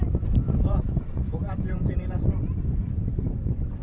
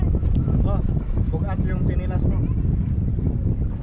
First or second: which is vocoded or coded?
first